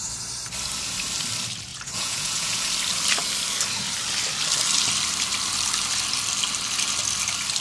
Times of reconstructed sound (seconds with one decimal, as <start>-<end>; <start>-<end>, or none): 1.7-2.7